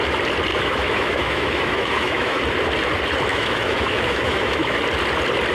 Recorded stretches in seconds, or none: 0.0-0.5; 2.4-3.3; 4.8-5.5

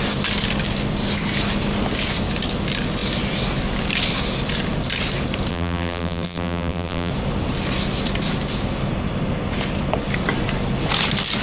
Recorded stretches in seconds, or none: 0.0-5.5; 7.1-11.4

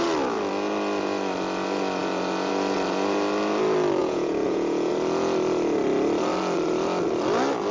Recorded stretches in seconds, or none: 0.0-4.0; 4.9-7.7

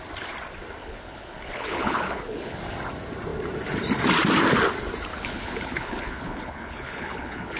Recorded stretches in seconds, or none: 0.0-0.8; 2.6-5.1

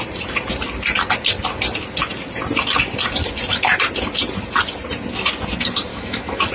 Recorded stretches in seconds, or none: 0.0-5.9

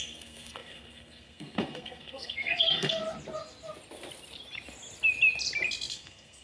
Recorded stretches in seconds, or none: 3.0-5.9